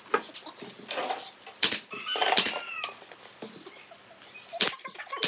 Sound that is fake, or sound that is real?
real